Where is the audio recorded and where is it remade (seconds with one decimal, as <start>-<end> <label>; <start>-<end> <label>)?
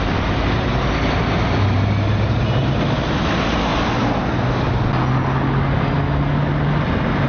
0.0-7.3 recorded